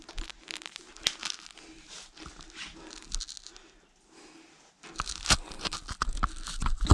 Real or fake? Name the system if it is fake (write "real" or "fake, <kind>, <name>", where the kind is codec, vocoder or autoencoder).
real